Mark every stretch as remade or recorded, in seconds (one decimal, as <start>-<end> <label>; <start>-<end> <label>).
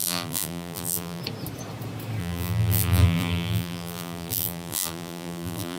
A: 0.0-1.2 remade; 1.2-2.2 recorded; 2.2-5.8 remade